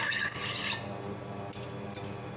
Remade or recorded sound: recorded